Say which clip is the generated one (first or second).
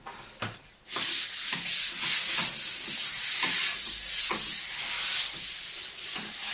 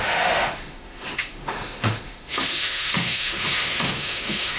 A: second